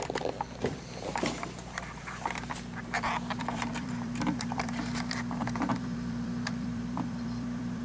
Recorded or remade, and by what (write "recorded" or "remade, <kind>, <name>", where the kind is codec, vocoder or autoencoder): remade, vocoder, BigVGAN v2